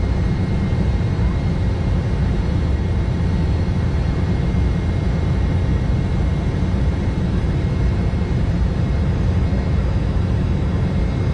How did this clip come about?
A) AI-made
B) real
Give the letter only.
A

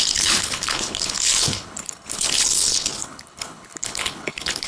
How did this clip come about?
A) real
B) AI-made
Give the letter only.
B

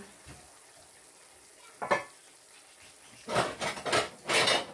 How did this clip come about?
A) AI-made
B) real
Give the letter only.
B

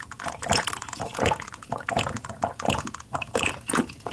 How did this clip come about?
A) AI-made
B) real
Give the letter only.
A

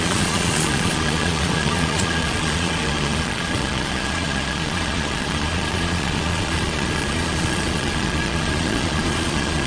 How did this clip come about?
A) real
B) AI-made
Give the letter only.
B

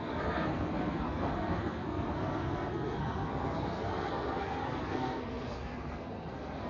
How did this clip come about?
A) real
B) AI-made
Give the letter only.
B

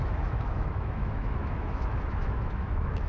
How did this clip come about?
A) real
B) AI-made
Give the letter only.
B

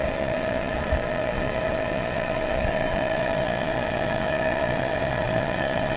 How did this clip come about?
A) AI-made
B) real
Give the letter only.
A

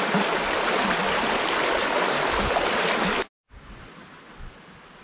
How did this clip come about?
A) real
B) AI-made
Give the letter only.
A